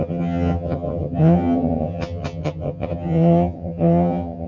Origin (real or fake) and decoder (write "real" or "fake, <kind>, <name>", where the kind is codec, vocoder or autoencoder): fake, vocoder, HiFi-GAN